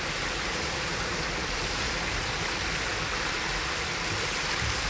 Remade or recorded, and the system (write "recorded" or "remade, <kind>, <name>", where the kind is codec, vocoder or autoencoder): recorded